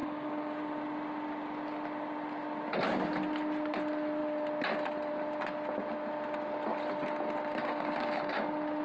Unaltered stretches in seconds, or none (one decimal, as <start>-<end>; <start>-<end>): 0.6-7.6; 8.4-8.8